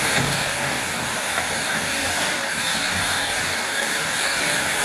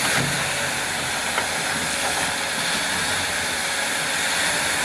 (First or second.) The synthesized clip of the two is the first